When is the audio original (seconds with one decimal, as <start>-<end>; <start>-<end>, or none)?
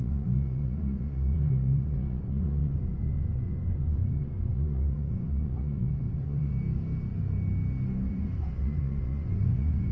6.5-8.1